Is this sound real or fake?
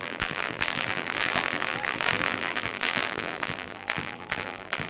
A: fake